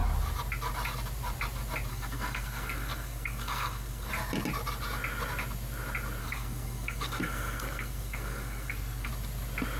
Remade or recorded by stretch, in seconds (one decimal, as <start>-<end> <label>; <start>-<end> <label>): 0.0-1.9 recorded; 1.9-4.1 remade; 4.1-6.2 recorded; 6.2-9.1 remade; 9.1-9.8 recorded